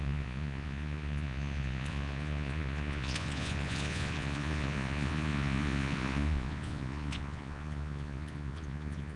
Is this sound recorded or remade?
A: remade